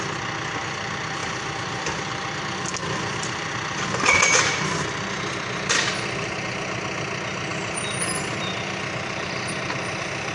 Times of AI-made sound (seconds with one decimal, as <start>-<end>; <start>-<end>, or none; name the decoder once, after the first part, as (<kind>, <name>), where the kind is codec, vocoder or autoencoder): 1.2-2.4 (vocoder, BigVGAN v2); 2.8-4.8; 7.5-10.3